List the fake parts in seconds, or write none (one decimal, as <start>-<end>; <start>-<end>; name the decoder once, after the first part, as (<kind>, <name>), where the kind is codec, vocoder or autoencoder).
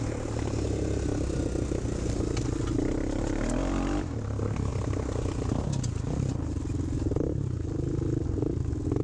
none